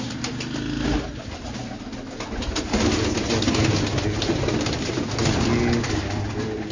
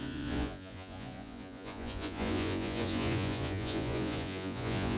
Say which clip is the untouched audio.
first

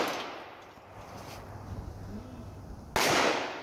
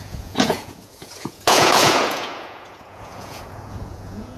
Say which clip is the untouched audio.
first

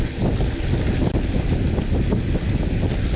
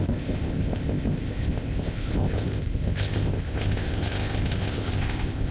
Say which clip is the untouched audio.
first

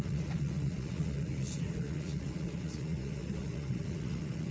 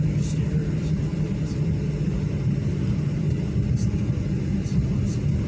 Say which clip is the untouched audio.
second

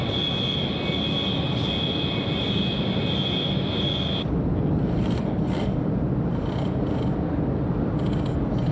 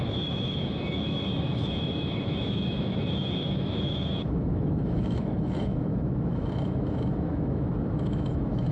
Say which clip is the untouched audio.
first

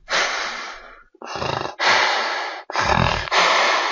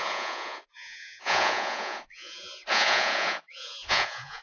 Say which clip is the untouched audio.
first